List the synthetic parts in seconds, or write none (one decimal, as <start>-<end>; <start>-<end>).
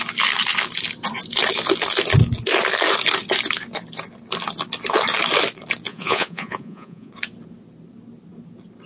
5.9-7.1